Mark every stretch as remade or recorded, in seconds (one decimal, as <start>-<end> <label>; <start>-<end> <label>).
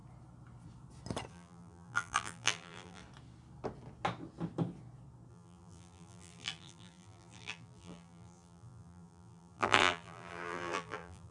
0.0-1.3 recorded; 1.3-3.0 remade; 3.0-5.3 recorded; 5.3-11.3 remade